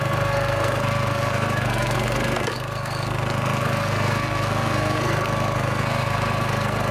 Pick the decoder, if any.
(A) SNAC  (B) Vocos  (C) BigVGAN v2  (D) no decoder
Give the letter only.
A